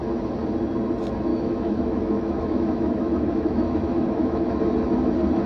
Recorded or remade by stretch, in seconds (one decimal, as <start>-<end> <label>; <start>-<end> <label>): 0.0-1.3 recorded; 1.3-4.6 remade; 4.6-5.5 recorded